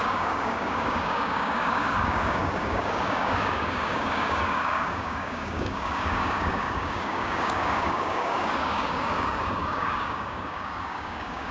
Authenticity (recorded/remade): remade